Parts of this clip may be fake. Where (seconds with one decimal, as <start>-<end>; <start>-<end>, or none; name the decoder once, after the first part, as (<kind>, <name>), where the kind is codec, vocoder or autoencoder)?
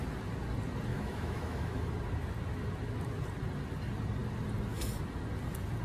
0.9-1.9 (autoencoder, DAC-VAE)